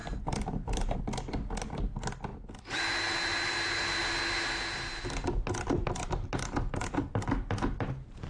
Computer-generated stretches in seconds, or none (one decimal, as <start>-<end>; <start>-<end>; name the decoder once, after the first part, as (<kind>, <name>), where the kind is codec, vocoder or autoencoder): 0.0-1.0 (vocoder, BigVGAN v2)